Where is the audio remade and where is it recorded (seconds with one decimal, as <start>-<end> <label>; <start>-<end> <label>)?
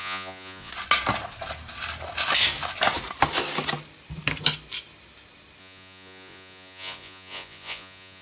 0.0-0.7 remade; 0.7-5.6 recorded; 5.6-8.2 remade